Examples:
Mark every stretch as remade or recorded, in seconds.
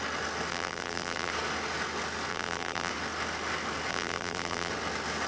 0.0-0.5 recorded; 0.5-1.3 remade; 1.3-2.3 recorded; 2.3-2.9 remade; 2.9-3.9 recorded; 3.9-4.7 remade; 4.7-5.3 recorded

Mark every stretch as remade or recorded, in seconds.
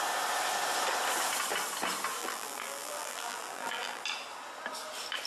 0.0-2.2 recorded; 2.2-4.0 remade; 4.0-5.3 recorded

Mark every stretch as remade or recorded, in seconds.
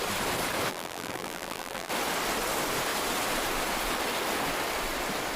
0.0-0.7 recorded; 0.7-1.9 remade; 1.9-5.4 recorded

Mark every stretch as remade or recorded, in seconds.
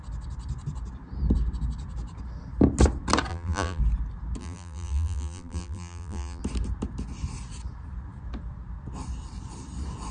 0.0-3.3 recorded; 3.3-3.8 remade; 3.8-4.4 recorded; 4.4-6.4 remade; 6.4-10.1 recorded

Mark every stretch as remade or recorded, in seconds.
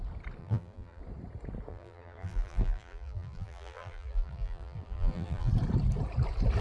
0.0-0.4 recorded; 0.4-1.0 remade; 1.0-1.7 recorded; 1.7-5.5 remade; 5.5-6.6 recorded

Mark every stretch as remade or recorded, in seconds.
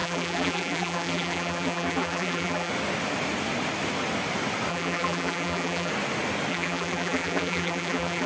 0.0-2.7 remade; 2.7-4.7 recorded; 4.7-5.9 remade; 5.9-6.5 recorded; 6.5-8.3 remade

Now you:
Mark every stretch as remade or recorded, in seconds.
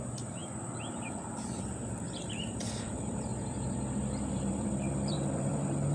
0.0-0.4 remade; 0.4-1.6 recorded; 1.6-3.3 remade; 3.3-4.3 recorded; 4.3-5.9 remade